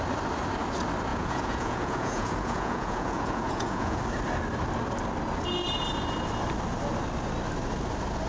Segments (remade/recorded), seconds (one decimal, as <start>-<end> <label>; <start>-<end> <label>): 0.0-1.1 recorded; 1.1-4.0 remade; 4.0-8.3 recorded